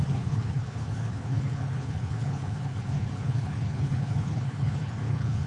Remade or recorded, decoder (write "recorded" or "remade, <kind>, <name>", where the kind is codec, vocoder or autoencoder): remade, codec, HILCodec